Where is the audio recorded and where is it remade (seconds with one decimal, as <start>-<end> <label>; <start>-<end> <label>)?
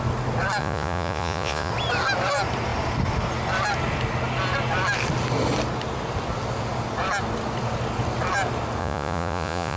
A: 0.0-0.6 recorded; 0.6-1.7 remade; 1.7-8.8 recorded; 8.8-9.8 remade